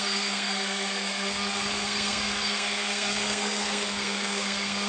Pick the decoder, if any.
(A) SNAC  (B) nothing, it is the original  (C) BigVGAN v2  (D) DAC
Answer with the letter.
A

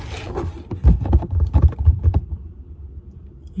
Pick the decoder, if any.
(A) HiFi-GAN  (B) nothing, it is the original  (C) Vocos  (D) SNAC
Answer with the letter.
B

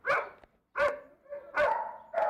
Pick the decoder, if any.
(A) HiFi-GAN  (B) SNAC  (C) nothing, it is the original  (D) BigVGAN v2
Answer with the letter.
C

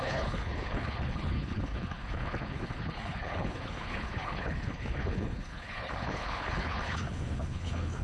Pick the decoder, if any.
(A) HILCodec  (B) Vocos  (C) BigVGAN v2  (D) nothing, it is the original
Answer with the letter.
A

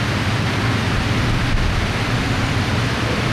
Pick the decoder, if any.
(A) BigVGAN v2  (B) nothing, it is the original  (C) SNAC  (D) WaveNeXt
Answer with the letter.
A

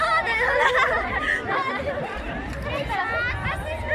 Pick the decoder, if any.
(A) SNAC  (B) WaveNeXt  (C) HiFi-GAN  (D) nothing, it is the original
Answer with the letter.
D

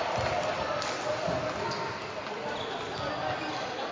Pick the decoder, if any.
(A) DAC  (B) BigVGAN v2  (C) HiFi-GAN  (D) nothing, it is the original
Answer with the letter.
D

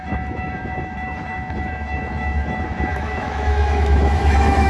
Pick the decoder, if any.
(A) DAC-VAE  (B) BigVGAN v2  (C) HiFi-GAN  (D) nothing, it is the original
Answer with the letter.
A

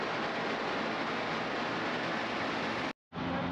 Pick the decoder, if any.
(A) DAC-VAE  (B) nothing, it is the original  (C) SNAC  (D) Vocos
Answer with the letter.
B